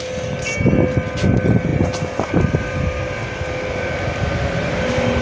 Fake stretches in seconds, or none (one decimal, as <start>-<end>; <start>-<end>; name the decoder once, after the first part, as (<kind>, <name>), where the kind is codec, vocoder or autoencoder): 1.7-4.8 (vocoder, BigVGAN v2)